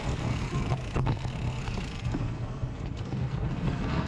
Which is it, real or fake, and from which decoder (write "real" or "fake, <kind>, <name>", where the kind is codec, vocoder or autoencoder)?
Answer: fake, codec, SNAC